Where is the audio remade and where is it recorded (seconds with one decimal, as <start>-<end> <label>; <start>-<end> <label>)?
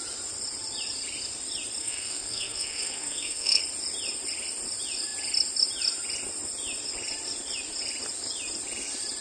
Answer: 0.0-1.8 recorded; 1.8-3.6 remade; 3.6-9.2 recorded